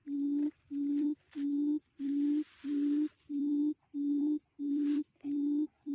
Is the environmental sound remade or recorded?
remade